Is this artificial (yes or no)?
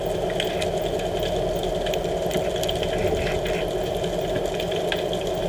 no